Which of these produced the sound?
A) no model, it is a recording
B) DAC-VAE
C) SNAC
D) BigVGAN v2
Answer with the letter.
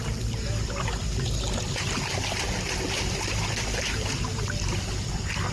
A